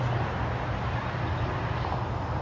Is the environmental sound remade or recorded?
recorded